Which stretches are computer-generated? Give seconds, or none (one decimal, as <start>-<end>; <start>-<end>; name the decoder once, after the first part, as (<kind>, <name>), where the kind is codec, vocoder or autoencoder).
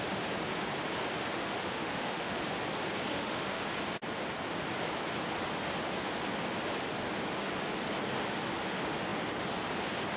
1.4-2.4 (autoencoder, DAC-VAE); 3.1-3.6